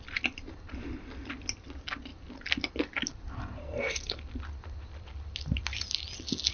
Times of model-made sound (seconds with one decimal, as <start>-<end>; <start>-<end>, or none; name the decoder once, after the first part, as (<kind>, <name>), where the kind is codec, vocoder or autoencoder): 3.6-4.2 (codec, SNAC)